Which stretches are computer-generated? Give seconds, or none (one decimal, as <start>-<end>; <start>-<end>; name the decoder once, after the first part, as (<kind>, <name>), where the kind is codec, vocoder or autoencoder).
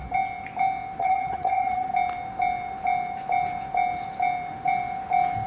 1.0-1.9 (vocoder, HiFi-GAN)